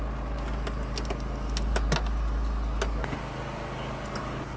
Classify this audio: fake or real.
real